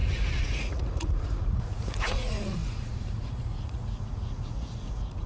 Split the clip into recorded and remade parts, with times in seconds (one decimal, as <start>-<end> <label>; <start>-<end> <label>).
0.0-5.3 remade